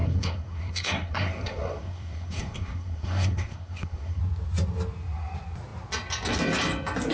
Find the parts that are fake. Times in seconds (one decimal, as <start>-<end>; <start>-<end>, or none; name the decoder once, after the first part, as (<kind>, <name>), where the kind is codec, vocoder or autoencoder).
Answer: 0.0-4.2 (codec, SNAC)